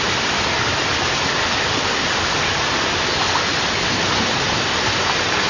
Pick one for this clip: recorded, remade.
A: recorded